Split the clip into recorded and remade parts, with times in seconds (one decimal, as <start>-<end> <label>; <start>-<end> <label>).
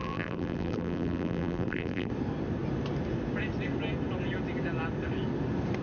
0.0-2.1 remade; 2.1-5.8 recorded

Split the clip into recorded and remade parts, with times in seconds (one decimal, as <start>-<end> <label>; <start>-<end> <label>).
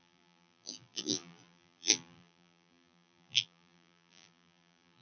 0.0-5.0 remade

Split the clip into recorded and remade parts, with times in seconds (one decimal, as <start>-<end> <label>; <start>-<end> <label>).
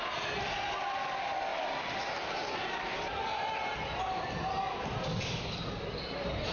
0.0-6.5 recorded